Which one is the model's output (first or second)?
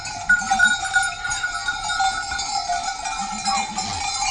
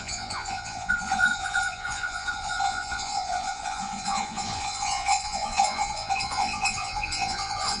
second